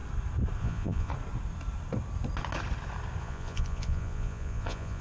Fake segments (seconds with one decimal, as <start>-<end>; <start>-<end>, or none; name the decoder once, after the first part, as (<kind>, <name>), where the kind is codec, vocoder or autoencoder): 0.6-1.1 (vocoder, Vocos); 3.2-5.0